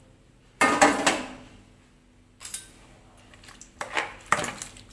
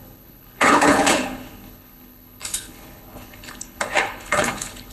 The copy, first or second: second